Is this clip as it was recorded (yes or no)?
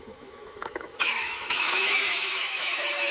no